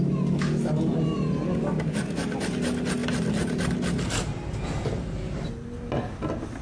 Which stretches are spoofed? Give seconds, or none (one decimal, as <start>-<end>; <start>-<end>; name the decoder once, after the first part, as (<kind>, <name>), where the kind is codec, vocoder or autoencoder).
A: none